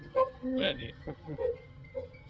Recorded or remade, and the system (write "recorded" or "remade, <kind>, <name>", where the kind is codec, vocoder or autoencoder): remade, vocoder, HiFi-GAN